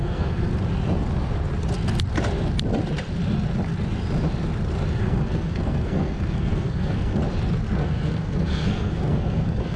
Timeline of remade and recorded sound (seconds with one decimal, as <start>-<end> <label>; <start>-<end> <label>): 0.0-0.5 remade; 0.5-5.0 recorded; 5.0-7.2 remade; 7.2-7.8 recorded; 7.8-9.8 remade